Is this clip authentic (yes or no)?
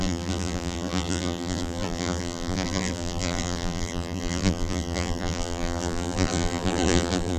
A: no